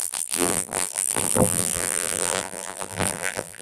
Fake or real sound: fake